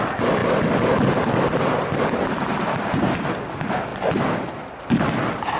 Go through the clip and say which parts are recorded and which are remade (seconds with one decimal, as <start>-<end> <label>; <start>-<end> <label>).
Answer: 0.0-5.6 recorded